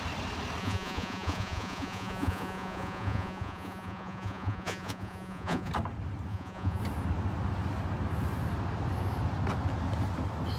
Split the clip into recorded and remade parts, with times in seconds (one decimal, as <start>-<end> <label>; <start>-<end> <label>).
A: 0.0-0.6 recorded; 0.6-5.7 remade; 5.7-6.3 recorded; 6.3-6.8 remade; 6.8-10.6 recorded